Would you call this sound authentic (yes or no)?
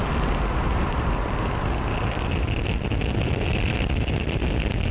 yes